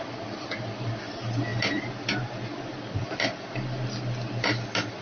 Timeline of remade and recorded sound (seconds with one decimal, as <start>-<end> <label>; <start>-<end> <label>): 0.0-5.0 recorded